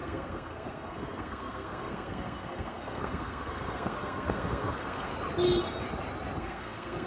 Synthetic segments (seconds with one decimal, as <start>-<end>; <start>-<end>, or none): 0.0-5.1; 6.4-7.1